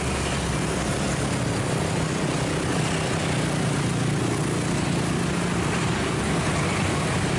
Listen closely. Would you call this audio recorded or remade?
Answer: recorded